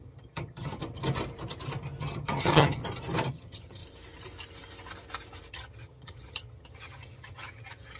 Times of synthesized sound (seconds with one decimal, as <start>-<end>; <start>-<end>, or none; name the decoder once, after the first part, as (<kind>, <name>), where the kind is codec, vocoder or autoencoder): 0.0-0.8 (vocoder, HiFi-GAN); 2.0-2.8; 3.3-3.8; 5.5-8.0